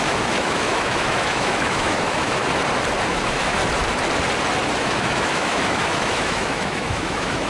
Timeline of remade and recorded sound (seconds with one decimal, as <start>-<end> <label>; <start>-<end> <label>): 0.0-2.4 remade; 2.4-3.1 recorded; 3.1-3.6 remade; 3.6-4.7 recorded; 4.7-7.5 remade